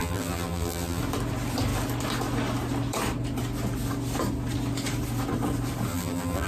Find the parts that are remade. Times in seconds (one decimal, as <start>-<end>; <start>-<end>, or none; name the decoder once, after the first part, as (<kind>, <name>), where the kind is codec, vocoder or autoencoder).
0.0-1.0 (vocoder, BigVGAN v2); 5.9-6.5